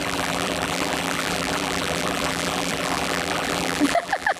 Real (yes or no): no